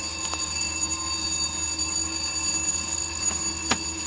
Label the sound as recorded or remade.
recorded